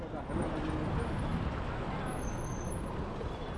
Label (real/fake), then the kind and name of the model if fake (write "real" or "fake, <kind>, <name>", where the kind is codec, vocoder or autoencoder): real